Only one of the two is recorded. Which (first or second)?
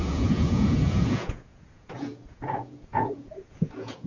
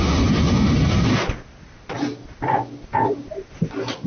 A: second